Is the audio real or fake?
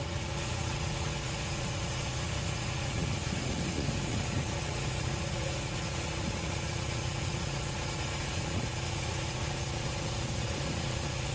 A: fake